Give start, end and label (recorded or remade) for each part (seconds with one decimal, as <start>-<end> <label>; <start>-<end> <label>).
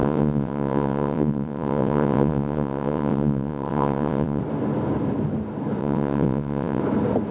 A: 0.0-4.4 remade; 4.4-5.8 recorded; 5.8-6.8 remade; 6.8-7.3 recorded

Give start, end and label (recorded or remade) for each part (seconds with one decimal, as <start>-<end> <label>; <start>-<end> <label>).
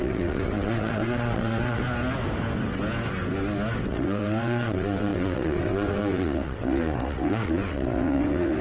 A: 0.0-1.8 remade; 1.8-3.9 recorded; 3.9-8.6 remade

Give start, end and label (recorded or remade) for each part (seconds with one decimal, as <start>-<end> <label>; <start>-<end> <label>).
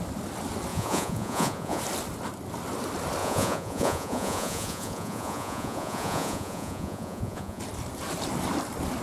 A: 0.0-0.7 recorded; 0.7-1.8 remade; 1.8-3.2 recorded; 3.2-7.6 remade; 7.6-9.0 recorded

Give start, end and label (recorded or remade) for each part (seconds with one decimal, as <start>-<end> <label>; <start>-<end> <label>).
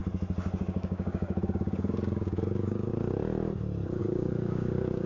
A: 0.0-0.6 recorded; 0.6-2.9 remade; 2.9-4.0 recorded; 4.0-5.1 remade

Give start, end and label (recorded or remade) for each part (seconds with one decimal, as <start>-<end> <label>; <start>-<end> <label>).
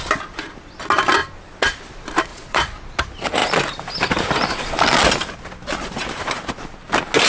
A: 0.0-2.3 recorded; 2.3-3.0 remade; 3.0-7.3 recorded